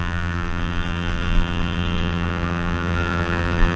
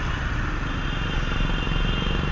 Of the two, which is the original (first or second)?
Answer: second